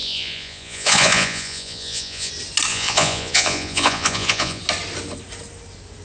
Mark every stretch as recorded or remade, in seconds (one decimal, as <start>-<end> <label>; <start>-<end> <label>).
0.0-2.3 remade; 2.3-2.7 recorded; 2.7-4.6 remade; 4.6-6.0 recorded